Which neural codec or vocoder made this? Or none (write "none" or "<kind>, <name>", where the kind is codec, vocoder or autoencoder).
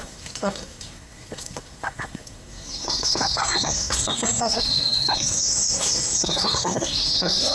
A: codec, SNAC